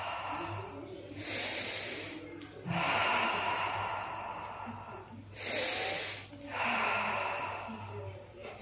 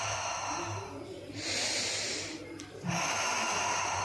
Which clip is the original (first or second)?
first